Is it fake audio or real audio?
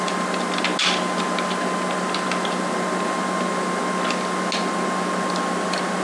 real